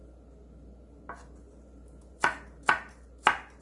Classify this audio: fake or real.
real